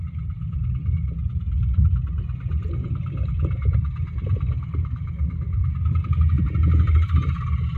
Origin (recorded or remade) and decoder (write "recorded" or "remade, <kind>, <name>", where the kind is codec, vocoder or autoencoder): recorded